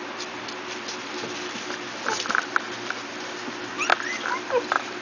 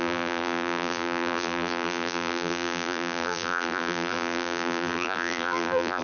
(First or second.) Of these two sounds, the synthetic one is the second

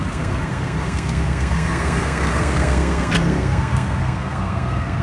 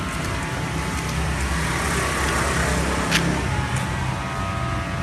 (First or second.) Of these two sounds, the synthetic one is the first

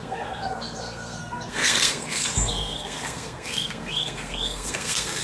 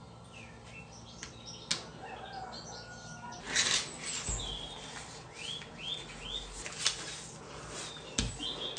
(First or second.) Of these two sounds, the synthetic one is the first